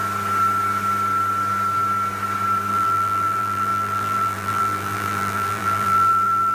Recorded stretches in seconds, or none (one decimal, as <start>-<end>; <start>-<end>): 0.0-2.7